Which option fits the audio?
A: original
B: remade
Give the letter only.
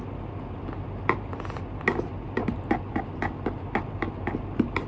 A